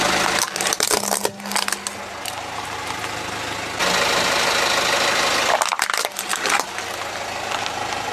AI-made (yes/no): no